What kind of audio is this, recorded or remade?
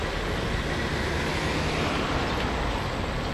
recorded